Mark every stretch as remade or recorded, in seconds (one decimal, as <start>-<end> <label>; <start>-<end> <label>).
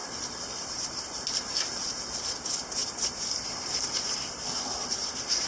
0.0-2.2 remade; 2.2-2.8 recorded; 2.8-5.1 remade; 5.1-5.5 recorded